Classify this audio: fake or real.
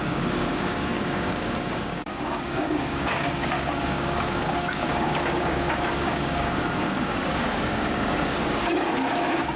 fake